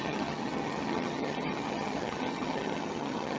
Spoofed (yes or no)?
yes